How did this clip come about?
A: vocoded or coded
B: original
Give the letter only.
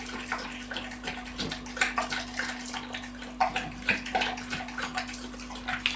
B